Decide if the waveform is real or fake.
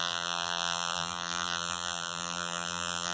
fake